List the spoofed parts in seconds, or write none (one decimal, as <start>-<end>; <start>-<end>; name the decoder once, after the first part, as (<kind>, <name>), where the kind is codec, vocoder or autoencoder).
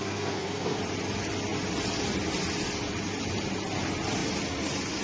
0.0-0.8 (codec, SNAC)